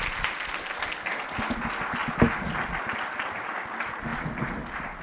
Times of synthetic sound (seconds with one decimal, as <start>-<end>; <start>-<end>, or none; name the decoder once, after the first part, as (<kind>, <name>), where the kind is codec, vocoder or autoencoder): none

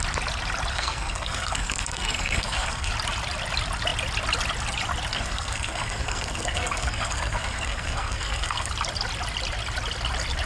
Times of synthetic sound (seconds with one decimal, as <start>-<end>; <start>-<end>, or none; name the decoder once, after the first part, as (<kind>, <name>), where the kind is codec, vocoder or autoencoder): 0.7-2.9 (codec, SNAC); 5.1-8.7

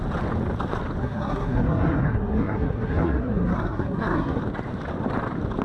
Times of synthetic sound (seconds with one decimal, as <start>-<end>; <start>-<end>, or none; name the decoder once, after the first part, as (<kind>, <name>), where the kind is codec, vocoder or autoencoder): 1.0-4.4 (codec, SNAC)

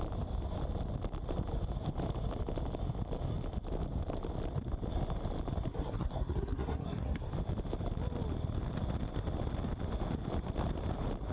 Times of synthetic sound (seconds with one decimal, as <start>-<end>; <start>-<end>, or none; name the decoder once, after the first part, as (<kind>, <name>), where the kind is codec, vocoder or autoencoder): 5.7-7.3 (codec, SNAC)

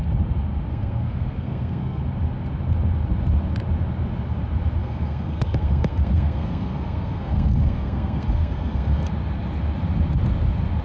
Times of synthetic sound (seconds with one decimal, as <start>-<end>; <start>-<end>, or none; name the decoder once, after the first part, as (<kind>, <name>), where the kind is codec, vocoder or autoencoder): 0.7-2.0 (codec, SNAC); 4.8-9.1

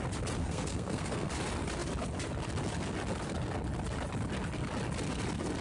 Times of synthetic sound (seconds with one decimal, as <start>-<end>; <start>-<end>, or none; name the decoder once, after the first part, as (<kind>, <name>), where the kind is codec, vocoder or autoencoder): 0.4-1.3 (codec, SNAC)

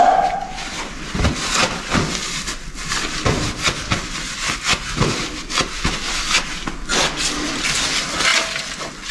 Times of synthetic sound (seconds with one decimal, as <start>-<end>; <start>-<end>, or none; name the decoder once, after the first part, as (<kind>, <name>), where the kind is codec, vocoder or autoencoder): none

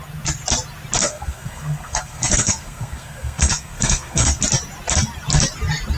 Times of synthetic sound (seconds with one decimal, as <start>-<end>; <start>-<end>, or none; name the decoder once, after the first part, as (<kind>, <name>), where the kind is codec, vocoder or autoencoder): 1.0-4.4 (codec, SNAC)